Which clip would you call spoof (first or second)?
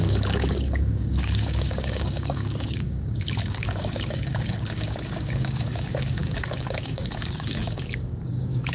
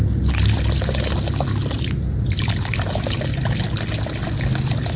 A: first